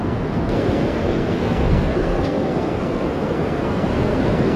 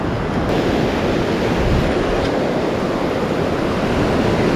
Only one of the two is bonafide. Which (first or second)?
second